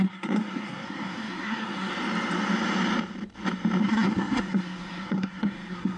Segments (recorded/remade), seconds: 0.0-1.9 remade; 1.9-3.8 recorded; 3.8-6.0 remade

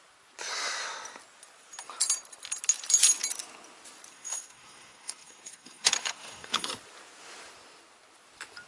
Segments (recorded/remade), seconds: 0.0-4.1 recorded; 4.1-6.7 remade; 6.7-8.7 recorded

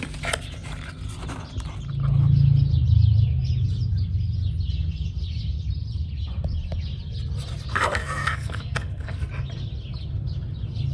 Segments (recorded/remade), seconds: 0.0-7.7 recorded; 7.7-9.3 remade; 9.3-10.9 recorded

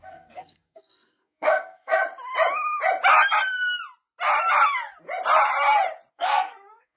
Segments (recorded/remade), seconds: 0.0-2.0 remade; 2.0-6.1 recorded; 6.1-7.0 remade

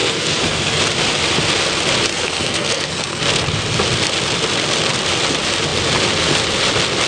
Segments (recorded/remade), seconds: 0.0-0.8 remade; 0.8-2.1 recorded; 2.1-3.2 remade; 3.2-7.1 recorded